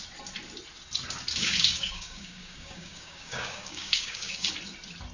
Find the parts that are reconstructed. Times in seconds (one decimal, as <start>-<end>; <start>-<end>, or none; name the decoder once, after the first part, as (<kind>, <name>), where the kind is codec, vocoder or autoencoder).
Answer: 1.4-4.5 (codec, DAC)